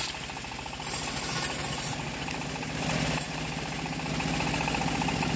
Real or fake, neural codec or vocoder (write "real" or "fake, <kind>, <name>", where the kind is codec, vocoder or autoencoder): real